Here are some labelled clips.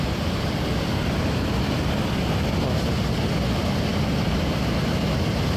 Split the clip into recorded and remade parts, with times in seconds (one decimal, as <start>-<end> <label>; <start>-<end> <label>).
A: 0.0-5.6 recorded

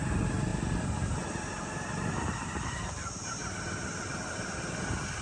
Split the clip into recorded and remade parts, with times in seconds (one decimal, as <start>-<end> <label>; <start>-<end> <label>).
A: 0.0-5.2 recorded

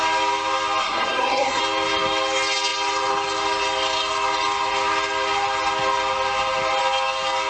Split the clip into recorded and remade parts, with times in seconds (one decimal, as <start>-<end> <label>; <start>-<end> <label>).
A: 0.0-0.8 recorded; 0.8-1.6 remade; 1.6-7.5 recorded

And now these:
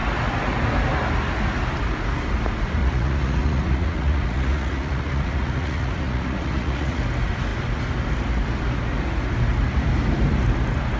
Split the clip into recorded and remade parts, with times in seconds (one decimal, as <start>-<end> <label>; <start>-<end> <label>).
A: 0.0-2.8 recorded; 2.8-7.0 remade; 7.0-11.0 recorded

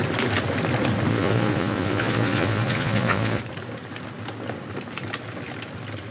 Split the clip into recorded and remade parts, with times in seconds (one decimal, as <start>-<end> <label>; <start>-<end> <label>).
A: 0.0-1.1 recorded; 1.1-3.4 remade; 3.4-6.1 recorded

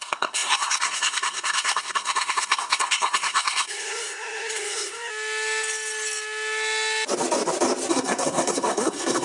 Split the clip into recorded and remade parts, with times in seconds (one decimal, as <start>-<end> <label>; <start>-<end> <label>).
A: 0.0-5.1 remade; 5.1-7.9 recorded; 7.9-9.2 remade

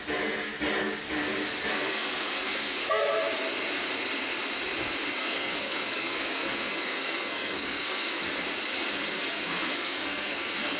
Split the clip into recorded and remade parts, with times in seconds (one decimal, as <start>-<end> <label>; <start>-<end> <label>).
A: 0.0-1.7 recorded; 1.7-2.8 remade; 2.8-5.2 recorded; 5.2-8.2 remade; 8.2-9.2 recorded; 9.2-10.8 remade

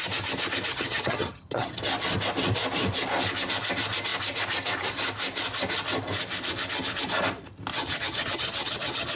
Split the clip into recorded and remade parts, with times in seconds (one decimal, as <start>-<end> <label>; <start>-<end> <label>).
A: 0.0-0.7 recorded; 0.7-1.8 remade; 1.8-7.7 recorded; 7.7-9.2 remade